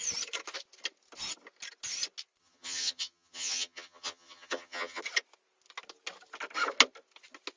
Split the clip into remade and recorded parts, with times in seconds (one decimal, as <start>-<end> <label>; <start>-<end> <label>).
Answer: 0.0-2.4 recorded; 2.4-5.0 remade; 5.0-7.6 recorded